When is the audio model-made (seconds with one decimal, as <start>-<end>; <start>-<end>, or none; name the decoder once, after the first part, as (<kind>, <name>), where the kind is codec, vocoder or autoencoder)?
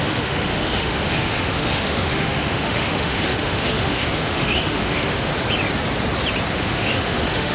0.0-5.3 (autoencoder, DAC-VAE); 6.5-7.5